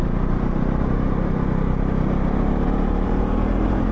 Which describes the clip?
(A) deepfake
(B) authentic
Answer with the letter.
A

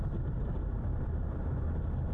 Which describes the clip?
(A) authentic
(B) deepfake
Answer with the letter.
A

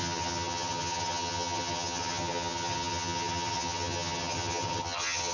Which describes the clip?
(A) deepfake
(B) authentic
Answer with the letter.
A